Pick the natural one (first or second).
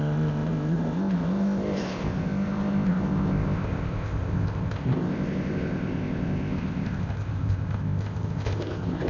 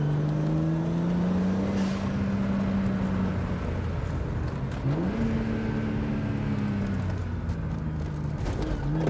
second